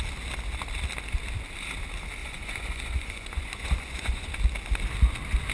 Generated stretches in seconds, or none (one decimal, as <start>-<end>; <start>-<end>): 2.2-4.3

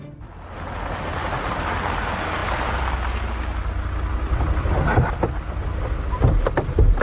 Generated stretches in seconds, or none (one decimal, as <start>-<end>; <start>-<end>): 1.2-1.7

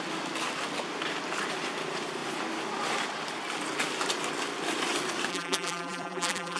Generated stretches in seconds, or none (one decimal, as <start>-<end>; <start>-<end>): 5.3-6.6

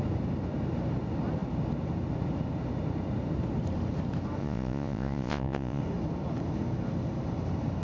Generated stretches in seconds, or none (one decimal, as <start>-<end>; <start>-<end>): 4.4-5.8

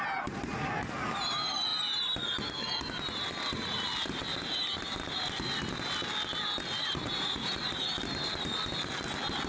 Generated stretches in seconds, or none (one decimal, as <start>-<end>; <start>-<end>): 6.8-7.8

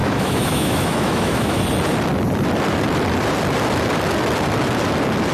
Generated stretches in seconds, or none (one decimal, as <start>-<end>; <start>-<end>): 0.0-1.6

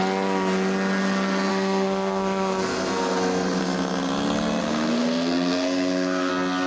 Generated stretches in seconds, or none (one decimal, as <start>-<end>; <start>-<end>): 1.5-3.6; 4.6-6.3